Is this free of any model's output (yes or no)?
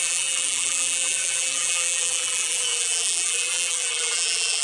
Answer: no